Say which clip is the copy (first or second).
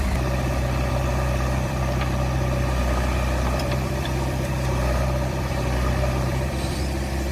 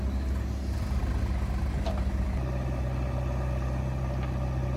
first